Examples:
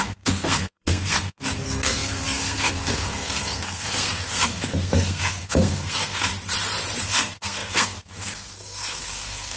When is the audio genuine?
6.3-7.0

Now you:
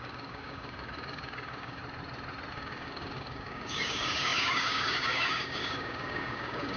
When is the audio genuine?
1.8-2.5

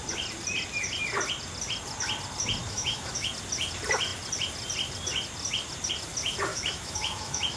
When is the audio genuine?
0.0-2.6; 3.3-6.5

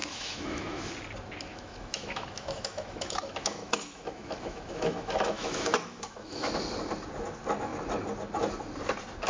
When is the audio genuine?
0.9-1.5; 6.5-9.3

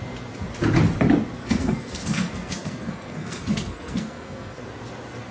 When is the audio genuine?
0.0-1.4; 4.6-5.3

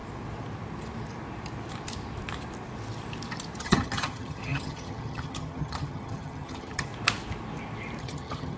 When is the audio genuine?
0.0-3.6; 6.9-8.0

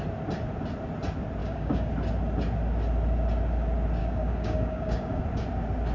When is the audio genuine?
0.0-1.4; 1.9-4.0; 5.2-5.9

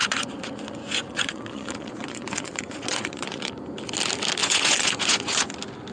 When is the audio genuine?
3.5-4.4; 5.5-5.9